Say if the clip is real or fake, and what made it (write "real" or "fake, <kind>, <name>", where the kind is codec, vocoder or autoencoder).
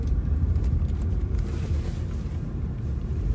fake, vocoder, BigVGAN v2